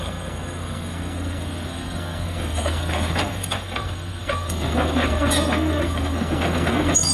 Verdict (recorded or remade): remade